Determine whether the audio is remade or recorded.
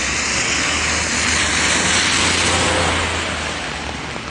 recorded